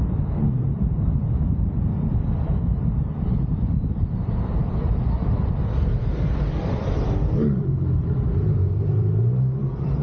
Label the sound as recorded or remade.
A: remade